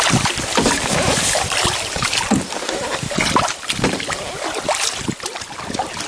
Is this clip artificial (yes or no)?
no